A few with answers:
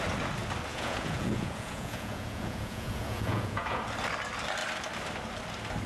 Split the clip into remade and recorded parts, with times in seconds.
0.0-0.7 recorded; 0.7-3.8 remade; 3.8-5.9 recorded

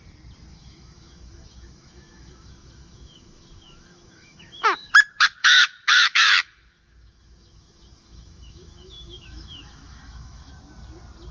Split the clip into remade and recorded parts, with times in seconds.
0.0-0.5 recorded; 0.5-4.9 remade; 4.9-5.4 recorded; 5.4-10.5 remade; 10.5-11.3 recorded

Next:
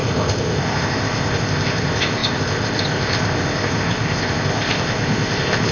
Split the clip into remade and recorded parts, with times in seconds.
0.0-5.7 remade

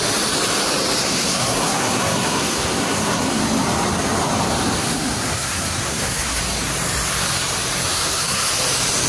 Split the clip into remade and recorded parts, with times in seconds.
0.0-1.0 recorded; 1.0-3.4 remade; 3.4-4.8 recorded; 4.8-6.4 remade; 6.4-7.9 recorded; 7.9-8.5 remade; 8.5-9.1 recorded

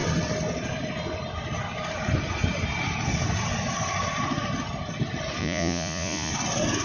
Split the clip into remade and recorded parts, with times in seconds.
0.0-5.4 recorded; 5.4-6.3 remade; 6.3-6.8 recorded